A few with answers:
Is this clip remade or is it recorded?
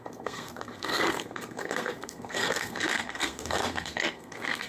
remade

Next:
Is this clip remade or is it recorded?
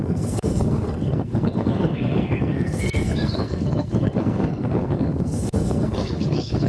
remade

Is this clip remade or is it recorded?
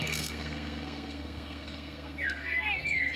remade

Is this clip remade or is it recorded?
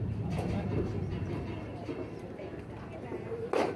recorded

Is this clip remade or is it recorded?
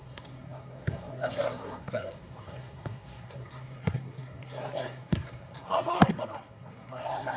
remade